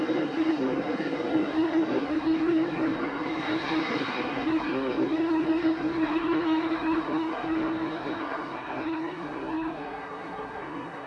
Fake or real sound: fake